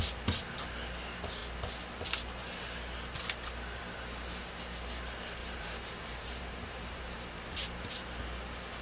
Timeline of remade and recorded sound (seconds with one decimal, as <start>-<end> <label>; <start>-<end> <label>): 0.0-5.4 recorded; 5.4-8.0 remade; 8.0-8.8 recorded